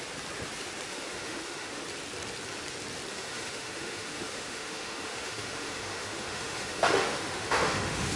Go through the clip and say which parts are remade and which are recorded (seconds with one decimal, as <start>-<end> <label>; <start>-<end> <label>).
0.0-0.9 recorded; 0.9-1.8 remade; 1.8-3.1 recorded; 3.1-8.2 remade